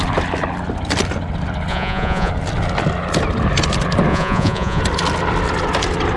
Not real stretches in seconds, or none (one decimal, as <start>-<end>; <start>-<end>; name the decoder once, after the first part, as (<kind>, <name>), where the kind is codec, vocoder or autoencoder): 1.7-2.3 (vocoder, Vocos); 4.1-4.8